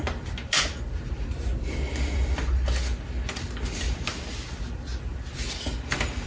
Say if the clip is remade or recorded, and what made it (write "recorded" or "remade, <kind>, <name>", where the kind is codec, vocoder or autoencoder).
recorded